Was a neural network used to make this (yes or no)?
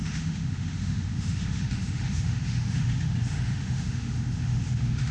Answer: yes